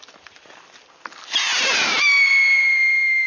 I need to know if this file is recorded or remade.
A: recorded